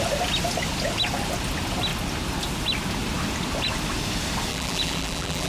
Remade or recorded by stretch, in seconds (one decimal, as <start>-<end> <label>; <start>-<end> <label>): 0.0-4.5 recorded; 4.5-5.5 remade